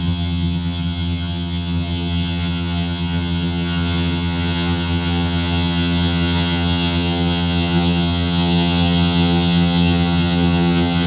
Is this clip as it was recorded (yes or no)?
no